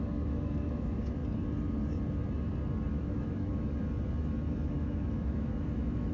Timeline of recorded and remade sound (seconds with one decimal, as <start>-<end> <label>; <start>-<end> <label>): 0.0-1.2 remade; 1.2-2.9 recorded; 2.9-3.7 remade; 3.7-4.7 recorded; 4.7-6.1 remade